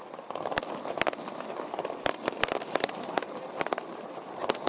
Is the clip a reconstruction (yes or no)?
no